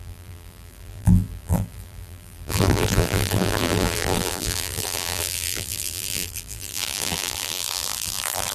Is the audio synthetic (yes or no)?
yes